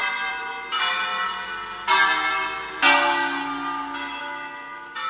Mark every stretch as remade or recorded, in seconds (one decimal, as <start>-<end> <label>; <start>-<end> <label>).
0.0-0.5 remade; 0.5-5.1 recorded